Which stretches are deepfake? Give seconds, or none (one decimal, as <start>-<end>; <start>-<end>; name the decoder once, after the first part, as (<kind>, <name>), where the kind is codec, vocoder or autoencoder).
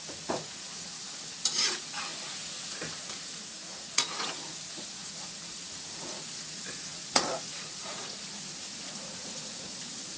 0.0-10.2 (vocoder, Vocos)